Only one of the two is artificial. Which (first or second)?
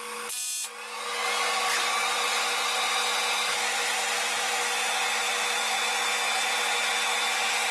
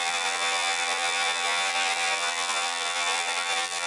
second